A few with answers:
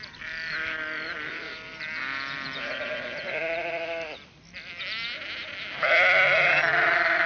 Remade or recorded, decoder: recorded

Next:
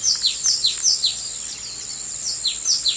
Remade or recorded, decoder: recorded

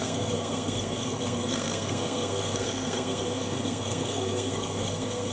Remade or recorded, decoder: remade, codec, SNAC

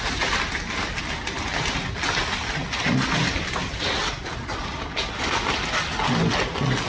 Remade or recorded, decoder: recorded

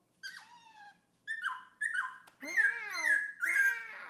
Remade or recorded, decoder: recorded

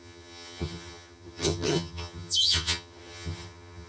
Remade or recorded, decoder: remade, vocoder, HiFi-GAN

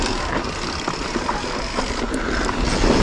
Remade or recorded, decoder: recorded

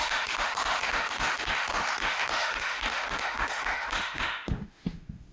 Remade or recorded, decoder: remade, autoencoder, DAC-VAE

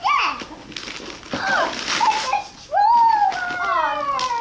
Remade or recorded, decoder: recorded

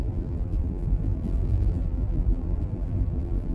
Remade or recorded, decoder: remade, vocoder, BigVGAN v2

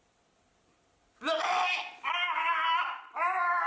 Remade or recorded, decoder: recorded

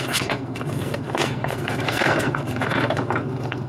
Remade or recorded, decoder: remade, codec, SNAC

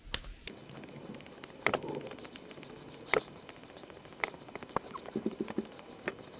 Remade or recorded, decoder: recorded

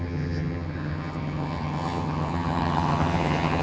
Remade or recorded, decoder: remade, vocoder, HiFi-GAN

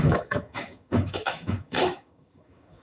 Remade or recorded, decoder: remade, autoencoder, DAC-VAE